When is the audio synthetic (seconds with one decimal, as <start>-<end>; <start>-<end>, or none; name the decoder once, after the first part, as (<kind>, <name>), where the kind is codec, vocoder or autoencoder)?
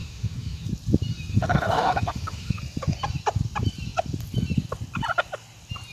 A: 0.0-0.7 (autoencoder, DAC-VAE); 1.3-2.6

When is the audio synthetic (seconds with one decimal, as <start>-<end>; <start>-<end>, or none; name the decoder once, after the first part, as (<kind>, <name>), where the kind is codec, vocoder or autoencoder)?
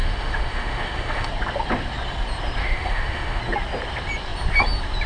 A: 0.0-1.3 (autoencoder, DAC-VAE); 2.6-3.4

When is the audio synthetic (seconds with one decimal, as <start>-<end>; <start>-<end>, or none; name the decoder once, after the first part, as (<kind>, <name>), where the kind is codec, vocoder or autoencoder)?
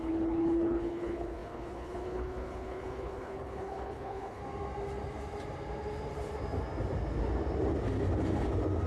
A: 0.0-4.4 (codec, HILCodec)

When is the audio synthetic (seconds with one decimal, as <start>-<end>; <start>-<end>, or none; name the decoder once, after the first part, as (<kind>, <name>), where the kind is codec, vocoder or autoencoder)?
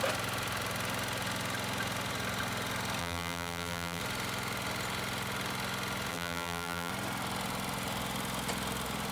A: 3.0-4.0 (vocoder, BigVGAN v2); 6.1-6.9